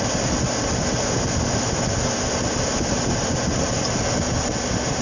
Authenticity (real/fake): real